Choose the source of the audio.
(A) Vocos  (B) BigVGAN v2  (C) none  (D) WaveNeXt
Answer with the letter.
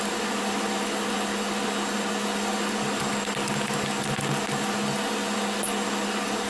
C